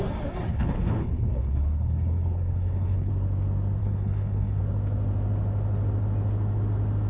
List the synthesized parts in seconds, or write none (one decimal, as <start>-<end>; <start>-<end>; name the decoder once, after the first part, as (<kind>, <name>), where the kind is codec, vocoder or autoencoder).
0.5-3.1 (codec, HILCodec); 3.8-4.6